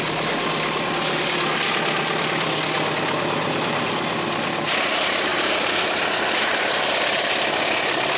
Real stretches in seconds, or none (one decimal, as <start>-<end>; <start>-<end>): 0.0-8.2